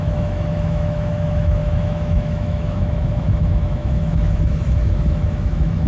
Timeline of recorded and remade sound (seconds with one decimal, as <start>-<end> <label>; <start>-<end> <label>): 0.0-5.9 remade